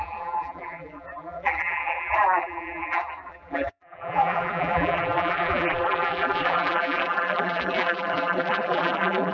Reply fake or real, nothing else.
fake